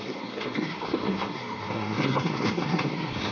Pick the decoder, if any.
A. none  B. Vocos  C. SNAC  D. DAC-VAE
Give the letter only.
C